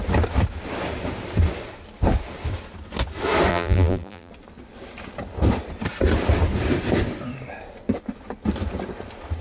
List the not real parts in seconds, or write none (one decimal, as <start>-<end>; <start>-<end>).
3.5-4.3

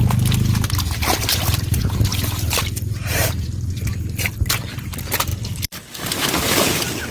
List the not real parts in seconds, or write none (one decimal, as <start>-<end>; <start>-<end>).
2.1-4.5; 5.3-6.0

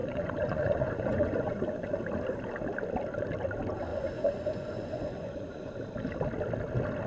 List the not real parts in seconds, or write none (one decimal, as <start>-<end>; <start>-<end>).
0.0-2.0; 3.9-5.7